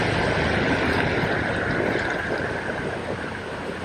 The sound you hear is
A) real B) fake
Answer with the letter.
A